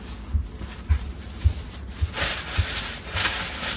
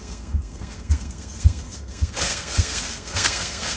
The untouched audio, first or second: first